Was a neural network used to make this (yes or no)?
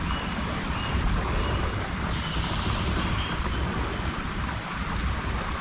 no